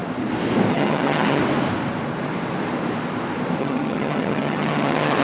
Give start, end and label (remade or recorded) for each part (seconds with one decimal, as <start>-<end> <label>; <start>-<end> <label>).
0.0-0.7 recorded; 0.7-1.4 remade; 1.4-3.6 recorded; 3.6-5.2 remade